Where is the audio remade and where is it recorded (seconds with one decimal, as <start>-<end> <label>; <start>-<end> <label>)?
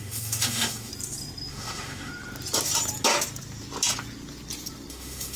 0.0-0.9 remade; 0.9-1.5 recorded; 1.5-2.1 remade; 2.1-4.9 recorded; 4.9-5.4 remade